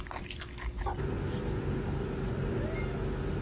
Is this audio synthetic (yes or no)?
no